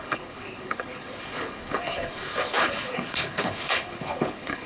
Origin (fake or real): fake